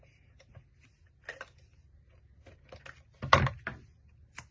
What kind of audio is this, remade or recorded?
recorded